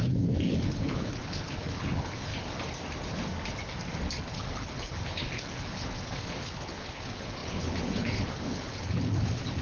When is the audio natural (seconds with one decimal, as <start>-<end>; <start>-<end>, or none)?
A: 2.3-4.2